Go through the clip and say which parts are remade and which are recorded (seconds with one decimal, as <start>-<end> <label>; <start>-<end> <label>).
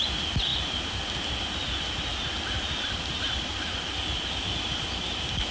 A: 0.0-0.5 recorded; 0.5-1.1 remade; 1.1-2.1 recorded; 2.1-3.7 remade; 3.7-5.5 recorded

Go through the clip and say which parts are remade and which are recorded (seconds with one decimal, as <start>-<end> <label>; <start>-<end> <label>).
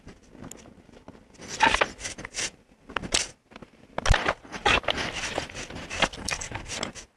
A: 0.0-6.2 recorded; 6.2-6.7 remade; 6.7-7.2 recorded